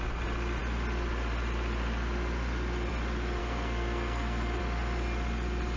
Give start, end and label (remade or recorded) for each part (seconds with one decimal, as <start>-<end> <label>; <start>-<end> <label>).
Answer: 0.0-3.4 recorded; 3.4-4.6 remade; 4.6-5.8 recorded